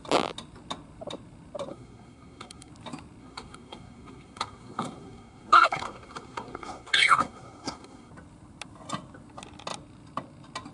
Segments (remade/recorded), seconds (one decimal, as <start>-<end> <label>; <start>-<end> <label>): 0.0-1.7 recorded; 1.7-2.7 remade; 2.7-3.2 recorded; 3.2-8.1 remade; 8.1-10.7 recorded